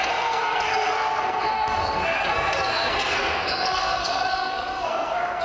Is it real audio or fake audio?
fake